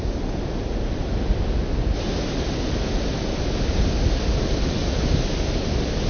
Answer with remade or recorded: recorded